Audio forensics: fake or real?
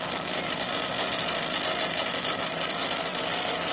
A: real